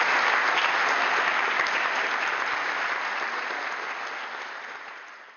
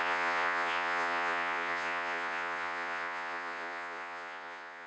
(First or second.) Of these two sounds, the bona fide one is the first